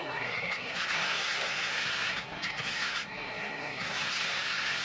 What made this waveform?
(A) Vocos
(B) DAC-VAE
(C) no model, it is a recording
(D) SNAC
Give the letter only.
D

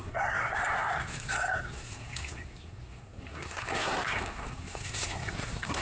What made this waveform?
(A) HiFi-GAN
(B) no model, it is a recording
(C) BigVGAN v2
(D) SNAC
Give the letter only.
D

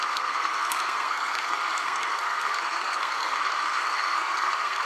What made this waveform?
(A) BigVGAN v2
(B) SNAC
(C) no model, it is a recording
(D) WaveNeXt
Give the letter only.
B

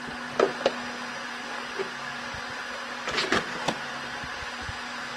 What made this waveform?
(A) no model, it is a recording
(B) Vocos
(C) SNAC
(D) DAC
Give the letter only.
A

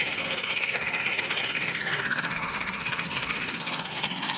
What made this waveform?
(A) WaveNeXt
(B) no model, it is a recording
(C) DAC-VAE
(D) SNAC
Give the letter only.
D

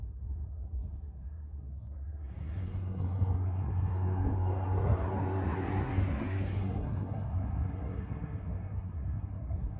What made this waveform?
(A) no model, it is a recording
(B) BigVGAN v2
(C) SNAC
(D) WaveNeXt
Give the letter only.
C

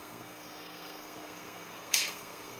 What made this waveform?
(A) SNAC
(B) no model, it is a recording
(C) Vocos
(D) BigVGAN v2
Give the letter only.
A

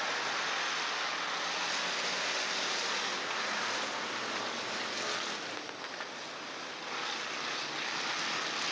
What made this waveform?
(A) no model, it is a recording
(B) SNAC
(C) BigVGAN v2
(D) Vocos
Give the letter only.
A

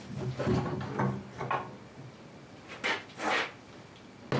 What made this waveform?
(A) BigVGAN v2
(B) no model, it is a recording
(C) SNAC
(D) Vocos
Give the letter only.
B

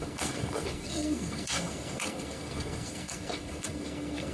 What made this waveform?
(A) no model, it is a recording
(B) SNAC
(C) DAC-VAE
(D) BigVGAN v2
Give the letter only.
B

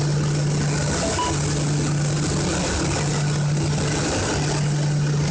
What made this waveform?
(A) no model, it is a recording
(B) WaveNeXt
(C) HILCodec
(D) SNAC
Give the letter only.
A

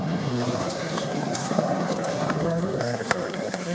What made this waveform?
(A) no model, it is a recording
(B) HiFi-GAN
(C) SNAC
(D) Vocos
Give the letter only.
C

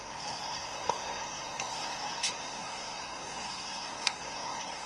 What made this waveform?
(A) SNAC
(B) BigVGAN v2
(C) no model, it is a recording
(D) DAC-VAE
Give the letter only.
A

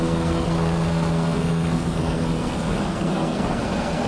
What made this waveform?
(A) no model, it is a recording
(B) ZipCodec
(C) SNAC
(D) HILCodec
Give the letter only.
C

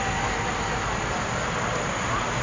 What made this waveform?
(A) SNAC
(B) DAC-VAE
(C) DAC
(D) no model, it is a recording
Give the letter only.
D